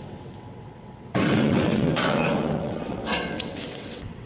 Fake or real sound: fake